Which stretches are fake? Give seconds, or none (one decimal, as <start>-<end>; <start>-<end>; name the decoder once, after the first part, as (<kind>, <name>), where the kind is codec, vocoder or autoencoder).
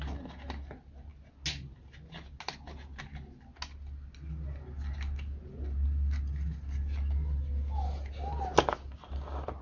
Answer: none